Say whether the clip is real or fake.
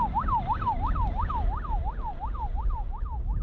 real